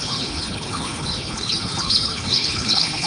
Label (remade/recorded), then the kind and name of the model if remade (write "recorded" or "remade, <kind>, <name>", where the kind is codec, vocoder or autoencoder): remade, codec, HILCodec